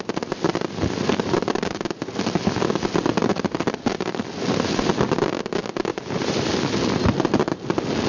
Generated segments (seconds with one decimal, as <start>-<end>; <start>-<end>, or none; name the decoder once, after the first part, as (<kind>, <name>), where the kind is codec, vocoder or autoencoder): 5.9-6.5 (vocoder, BigVGAN v2)